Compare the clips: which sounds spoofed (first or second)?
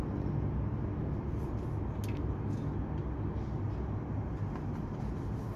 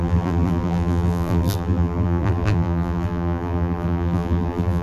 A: second